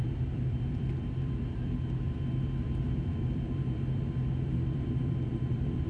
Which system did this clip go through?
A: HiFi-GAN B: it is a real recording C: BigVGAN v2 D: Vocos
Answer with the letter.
C